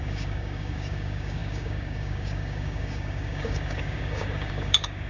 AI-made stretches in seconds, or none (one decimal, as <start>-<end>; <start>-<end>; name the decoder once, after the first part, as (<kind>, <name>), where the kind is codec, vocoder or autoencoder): 0.0-5.1 (codec, DAC)